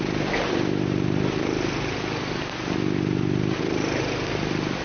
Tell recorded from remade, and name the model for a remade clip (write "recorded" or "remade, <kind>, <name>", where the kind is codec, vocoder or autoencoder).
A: recorded